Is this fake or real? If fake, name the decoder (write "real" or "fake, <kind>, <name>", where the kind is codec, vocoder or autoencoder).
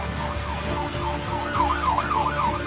fake, codec, SNAC